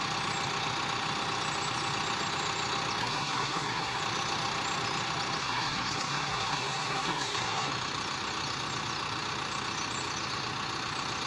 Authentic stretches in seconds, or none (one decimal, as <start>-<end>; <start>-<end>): 0.0-3.0; 4.0-5.4; 7.7-11.3